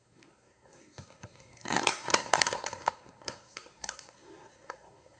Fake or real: fake